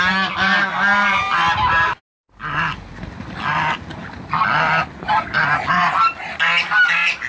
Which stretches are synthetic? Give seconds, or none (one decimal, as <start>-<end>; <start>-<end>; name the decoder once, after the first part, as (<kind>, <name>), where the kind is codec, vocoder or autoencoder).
none